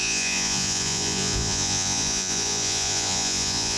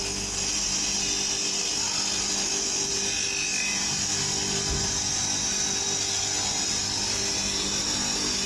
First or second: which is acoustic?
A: second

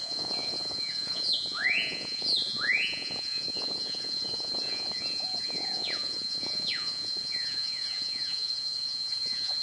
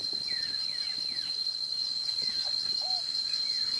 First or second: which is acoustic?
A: second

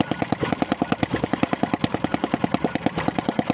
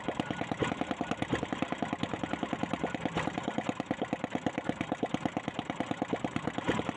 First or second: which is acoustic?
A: second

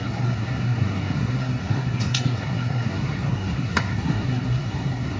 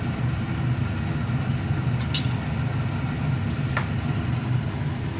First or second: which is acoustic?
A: second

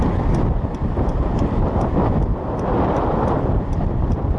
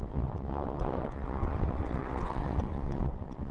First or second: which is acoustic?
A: first